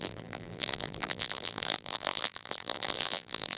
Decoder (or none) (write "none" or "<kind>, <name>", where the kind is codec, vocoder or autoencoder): vocoder, BigVGAN v2